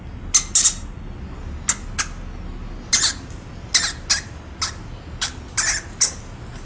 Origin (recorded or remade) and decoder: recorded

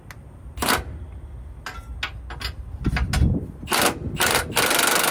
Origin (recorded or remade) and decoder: recorded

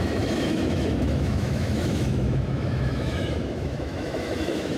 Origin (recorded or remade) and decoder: remade, autoencoder, DAC-VAE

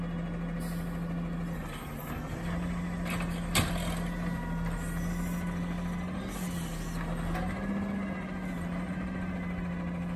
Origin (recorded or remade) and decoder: recorded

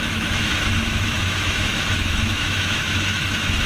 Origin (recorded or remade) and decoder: remade, autoencoder, DAC-VAE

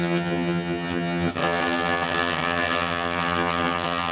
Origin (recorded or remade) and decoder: remade, vocoder, HiFi-GAN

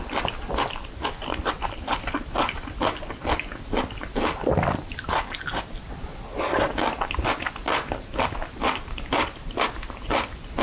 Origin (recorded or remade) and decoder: recorded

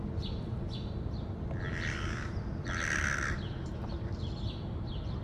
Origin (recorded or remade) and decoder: recorded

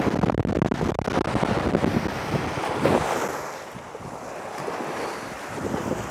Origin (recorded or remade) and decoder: recorded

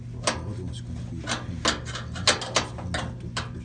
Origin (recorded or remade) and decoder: recorded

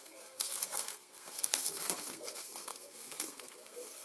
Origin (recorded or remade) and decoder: remade, codec, SNAC